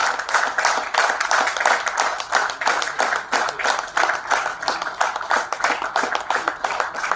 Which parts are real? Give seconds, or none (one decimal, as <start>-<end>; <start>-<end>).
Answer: 0.6-2.1; 3.5-7.2